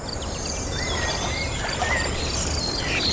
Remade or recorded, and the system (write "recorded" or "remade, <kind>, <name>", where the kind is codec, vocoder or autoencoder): recorded